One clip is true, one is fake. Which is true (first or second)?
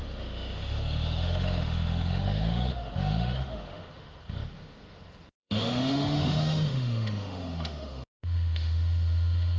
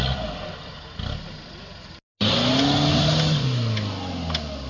second